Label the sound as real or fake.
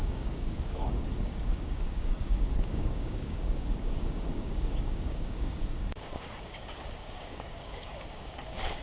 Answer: fake